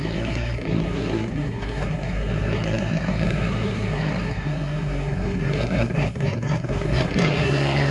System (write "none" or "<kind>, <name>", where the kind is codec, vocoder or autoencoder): codec, SNAC